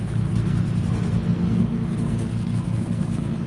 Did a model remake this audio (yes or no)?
yes